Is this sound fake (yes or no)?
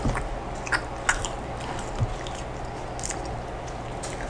no